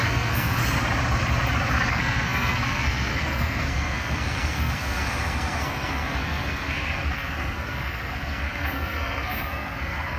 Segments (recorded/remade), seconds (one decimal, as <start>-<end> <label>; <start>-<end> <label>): 0.0-0.6 remade; 0.6-1.9 recorded; 1.9-10.2 remade

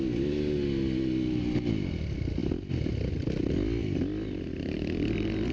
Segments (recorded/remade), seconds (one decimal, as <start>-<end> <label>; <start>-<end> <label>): 0.0-5.5 recorded

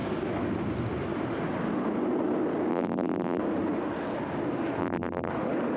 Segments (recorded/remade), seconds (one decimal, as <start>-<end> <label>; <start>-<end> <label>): 0.0-2.7 recorded; 2.7-3.4 remade; 3.4-4.8 recorded; 4.8-5.3 remade; 5.3-5.8 recorded

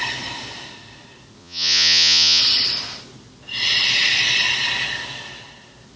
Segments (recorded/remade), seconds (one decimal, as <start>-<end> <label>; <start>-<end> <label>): 0.0-1.4 recorded; 1.4-2.4 remade; 2.4-6.0 recorded

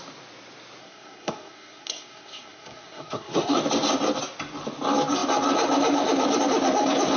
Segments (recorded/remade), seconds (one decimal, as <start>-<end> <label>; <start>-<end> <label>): 0.0-0.8 recorded; 0.8-3.6 remade; 3.6-7.2 recorded